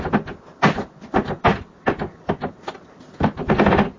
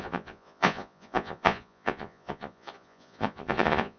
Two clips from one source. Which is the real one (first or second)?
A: first